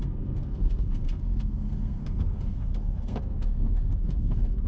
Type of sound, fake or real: fake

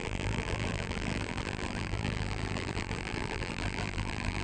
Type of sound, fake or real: fake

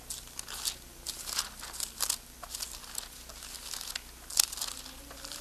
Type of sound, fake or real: real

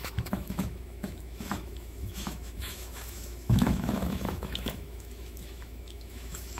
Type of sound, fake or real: fake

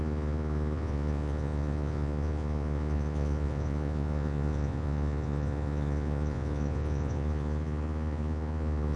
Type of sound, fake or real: fake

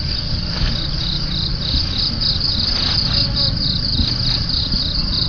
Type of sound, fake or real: real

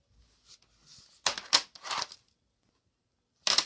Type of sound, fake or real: real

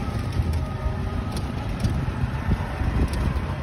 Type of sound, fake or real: real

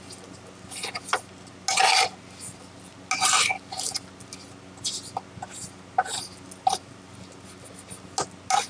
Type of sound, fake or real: real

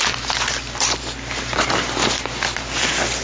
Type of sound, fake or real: real